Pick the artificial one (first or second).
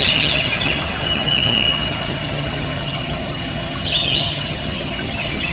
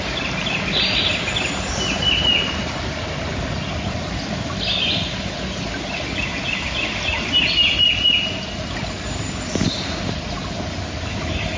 first